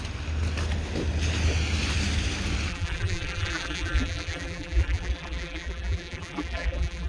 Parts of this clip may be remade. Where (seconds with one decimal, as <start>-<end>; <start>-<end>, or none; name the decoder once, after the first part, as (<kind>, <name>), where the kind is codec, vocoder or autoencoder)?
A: 2.7-7.1 (vocoder, BigVGAN v2)